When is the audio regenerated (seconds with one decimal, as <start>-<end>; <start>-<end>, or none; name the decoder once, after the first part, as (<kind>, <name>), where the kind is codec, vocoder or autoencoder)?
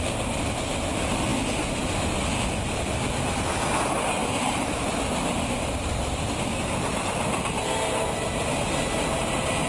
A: none